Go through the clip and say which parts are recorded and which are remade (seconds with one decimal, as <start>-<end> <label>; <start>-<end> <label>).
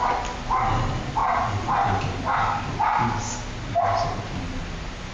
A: 0.0-5.1 recorded